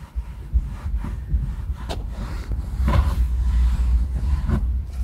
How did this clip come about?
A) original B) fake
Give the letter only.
B